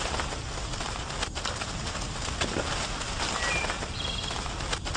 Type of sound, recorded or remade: recorded